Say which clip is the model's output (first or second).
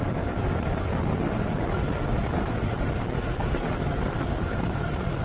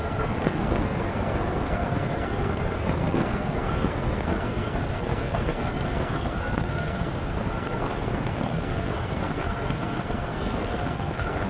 second